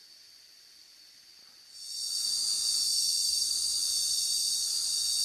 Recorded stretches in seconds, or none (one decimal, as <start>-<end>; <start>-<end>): 0.0-5.2